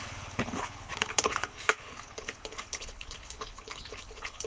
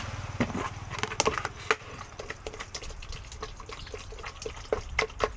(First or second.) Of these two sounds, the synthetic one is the first